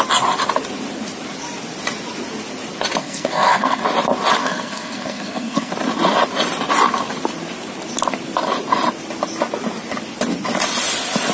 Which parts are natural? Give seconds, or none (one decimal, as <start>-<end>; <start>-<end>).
0.0-3.0; 3.8-4.4; 5.7-11.3

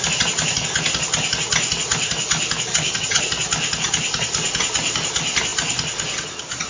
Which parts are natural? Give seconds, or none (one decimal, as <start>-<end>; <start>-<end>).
0.0-2.7; 3.2-6.7

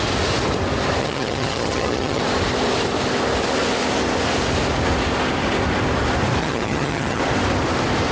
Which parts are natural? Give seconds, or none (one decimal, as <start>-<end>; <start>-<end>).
0.0-1.0; 2.2-6.4; 7.2-8.1

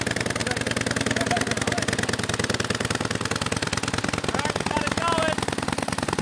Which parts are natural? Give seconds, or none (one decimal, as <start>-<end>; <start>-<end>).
0.0-6.2

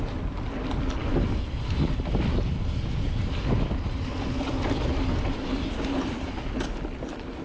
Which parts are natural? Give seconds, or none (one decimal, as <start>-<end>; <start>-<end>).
0.0-7.4

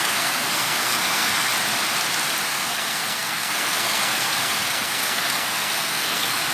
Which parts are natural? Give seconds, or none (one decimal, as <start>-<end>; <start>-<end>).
1.5-2.5

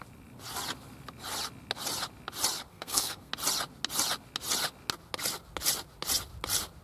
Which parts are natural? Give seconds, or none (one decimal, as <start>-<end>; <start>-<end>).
0.0-2.7; 3.3-6.8